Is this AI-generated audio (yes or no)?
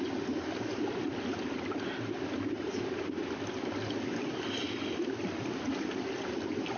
no